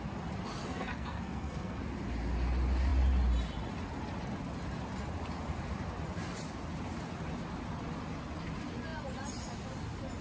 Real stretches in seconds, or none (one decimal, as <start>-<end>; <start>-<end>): 0.0-0.6; 1.8-10.2